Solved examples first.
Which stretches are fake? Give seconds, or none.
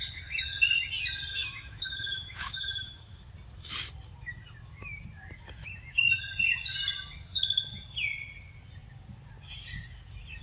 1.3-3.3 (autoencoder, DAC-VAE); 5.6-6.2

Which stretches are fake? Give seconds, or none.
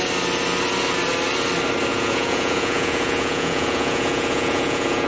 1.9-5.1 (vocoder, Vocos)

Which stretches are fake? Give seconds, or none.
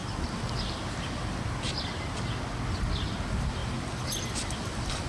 3.6-4.3 (vocoder, BigVGAN v2)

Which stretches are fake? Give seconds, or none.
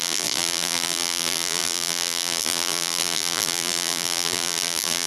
0.0-5.1 (vocoder, BigVGAN v2)